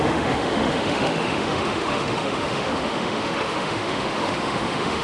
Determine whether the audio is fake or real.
fake